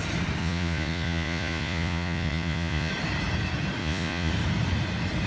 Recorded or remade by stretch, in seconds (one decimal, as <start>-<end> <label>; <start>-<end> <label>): 0.0-0.4 recorded; 0.4-2.9 remade; 2.9-3.8 recorded; 3.8-4.3 remade; 4.3-5.3 recorded